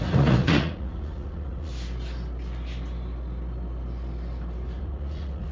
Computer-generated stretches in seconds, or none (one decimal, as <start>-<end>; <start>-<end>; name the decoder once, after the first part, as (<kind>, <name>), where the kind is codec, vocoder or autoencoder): 0.0-1.7 (vocoder, Vocos); 4.8-5.5